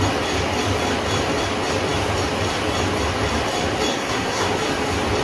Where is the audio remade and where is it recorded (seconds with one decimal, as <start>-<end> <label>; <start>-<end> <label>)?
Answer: 0.0-3.9 recorded; 3.9-4.5 remade; 4.5-5.2 recorded